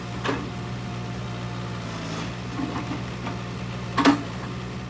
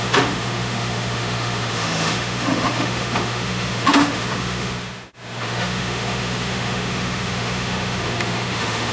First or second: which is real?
first